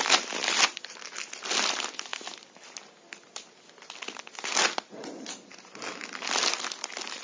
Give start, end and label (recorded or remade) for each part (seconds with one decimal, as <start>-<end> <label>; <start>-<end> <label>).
0.0-7.2 recorded